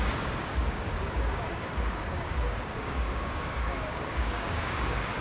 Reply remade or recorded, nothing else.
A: remade